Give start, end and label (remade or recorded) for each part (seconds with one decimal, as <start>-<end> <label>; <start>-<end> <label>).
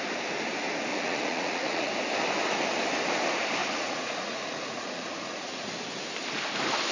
0.0-0.9 recorded; 0.9-1.9 remade; 1.9-3.6 recorded; 3.6-5.7 remade; 5.7-6.9 recorded